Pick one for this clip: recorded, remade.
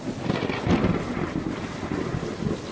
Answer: recorded